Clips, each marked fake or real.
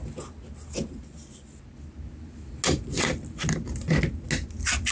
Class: real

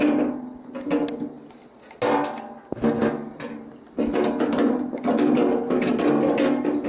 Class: real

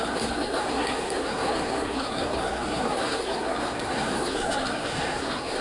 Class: fake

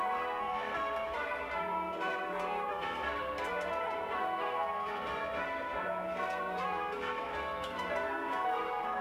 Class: fake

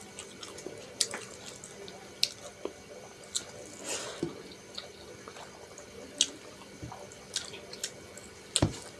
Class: real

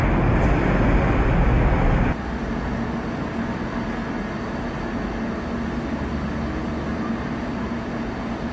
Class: real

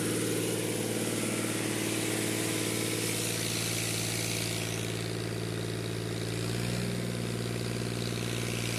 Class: real